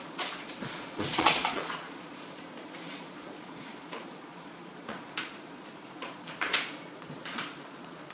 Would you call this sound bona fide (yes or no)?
no